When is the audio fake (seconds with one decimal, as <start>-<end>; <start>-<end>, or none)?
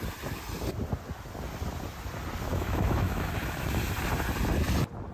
2.5-3.7